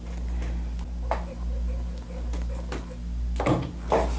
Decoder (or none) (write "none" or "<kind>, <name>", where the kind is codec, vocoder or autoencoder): none